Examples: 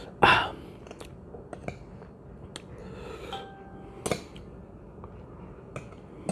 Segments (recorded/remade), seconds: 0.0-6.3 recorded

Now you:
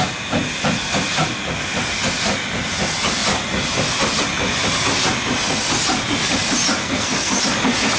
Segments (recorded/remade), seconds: 0.0-6.8 recorded; 6.8-7.4 remade; 7.4-8.0 recorded

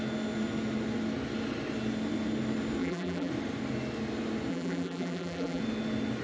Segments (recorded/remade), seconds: 0.0-2.8 recorded; 2.8-3.3 remade; 3.3-4.5 recorded; 4.5-5.6 remade; 5.6-6.2 recorded

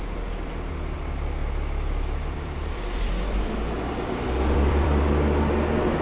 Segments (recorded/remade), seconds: 0.0-1.4 recorded; 1.4-5.0 remade; 5.0-6.0 recorded

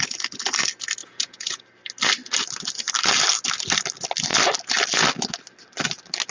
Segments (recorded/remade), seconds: 0.0-1.0 recorded; 1.0-1.6 remade; 1.6-6.3 recorded

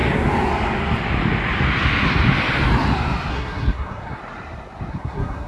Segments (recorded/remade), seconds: 0.0-3.3 recorded; 3.3-4.2 remade; 4.2-4.9 recorded; 4.9-5.5 remade

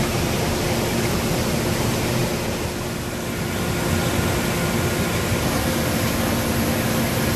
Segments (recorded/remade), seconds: 0.0-7.4 recorded